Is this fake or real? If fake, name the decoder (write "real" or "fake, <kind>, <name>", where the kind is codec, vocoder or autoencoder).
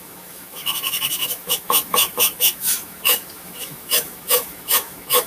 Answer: fake, autoencoder, DAC-VAE